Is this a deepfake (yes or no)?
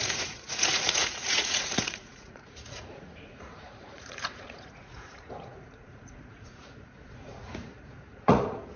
yes